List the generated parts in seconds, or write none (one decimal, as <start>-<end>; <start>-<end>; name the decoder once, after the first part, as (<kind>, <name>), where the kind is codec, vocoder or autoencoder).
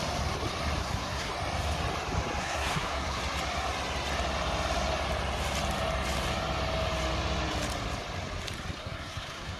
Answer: 0.8-1.3 (codec, SNAC); 2.4-3.2; 8.8-9.6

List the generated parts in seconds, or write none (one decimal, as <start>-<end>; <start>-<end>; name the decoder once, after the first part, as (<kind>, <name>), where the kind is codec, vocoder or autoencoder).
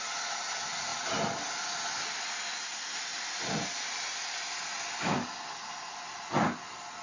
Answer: none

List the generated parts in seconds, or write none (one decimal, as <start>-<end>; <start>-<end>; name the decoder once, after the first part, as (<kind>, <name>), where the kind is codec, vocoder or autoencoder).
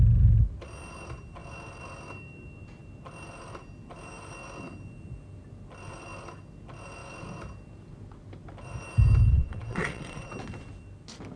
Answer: 9.3-10.3 (vocoder, WaveNeXt)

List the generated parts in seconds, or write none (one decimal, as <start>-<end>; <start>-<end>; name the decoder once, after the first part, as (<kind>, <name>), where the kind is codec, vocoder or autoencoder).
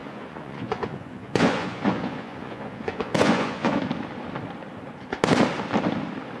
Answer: 0.0-3.8 (vocoder, Vocos)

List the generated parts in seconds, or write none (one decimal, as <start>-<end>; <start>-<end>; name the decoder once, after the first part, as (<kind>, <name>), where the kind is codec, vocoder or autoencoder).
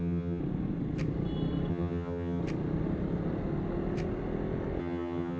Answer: 0.0-0.4 (vocoder, HiFi-GAN); 1.7-2.4; 4.8-5.4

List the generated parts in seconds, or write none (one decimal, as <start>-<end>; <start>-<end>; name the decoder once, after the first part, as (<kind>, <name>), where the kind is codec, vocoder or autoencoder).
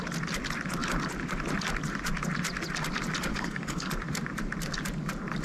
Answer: 3.3-3.9 (codec, DAC)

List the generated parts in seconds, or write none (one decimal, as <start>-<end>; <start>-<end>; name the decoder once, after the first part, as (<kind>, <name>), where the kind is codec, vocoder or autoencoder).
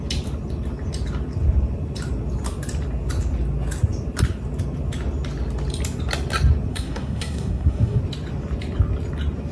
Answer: 6.7-8.0 (codec, SNAC)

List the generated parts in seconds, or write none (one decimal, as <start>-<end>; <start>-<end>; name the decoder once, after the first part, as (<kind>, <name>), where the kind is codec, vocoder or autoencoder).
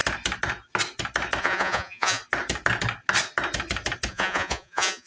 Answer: 1.4-2.2 (vocoder, Vocos); 4.1-5.1